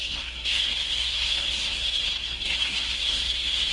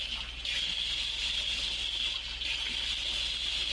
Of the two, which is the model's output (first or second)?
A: first